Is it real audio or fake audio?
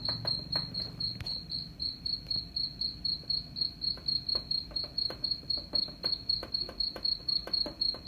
real